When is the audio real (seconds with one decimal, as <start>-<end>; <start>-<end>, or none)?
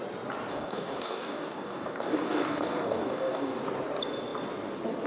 0.0-0.5; 3.6-5.1